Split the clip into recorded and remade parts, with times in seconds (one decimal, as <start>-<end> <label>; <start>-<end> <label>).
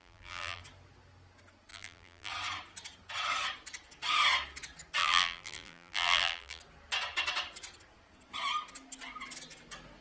0.0-0.6 remade; 0.6-1.7 recorded; 1.7-2.3 remade; 2.3-5.0 recorded; 5.0-6.6 remade; 6.6-10.0 recorded